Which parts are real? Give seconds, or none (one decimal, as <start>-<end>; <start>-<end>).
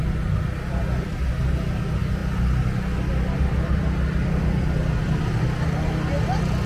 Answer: 0.0-6.7